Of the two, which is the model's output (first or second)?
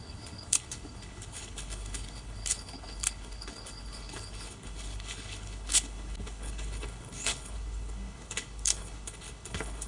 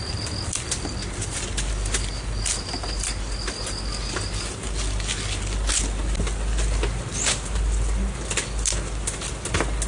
first